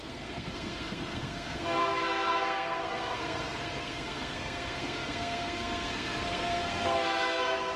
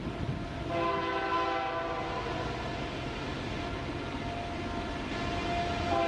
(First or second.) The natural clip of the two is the second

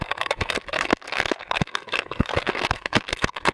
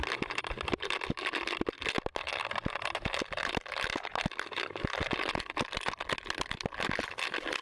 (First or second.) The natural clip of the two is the second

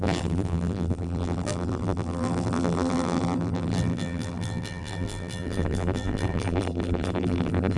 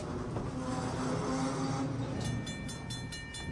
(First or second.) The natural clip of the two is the second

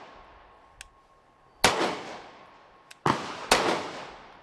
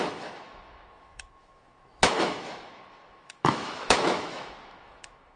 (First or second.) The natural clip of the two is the first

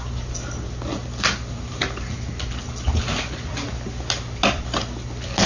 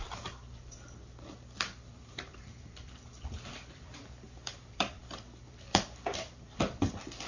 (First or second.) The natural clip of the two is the first